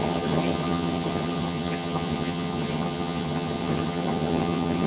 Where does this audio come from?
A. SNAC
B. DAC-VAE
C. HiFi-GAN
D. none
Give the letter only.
C